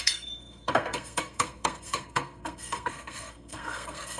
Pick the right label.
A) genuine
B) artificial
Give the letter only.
B